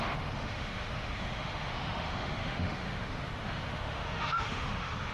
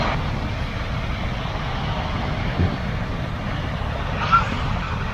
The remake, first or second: first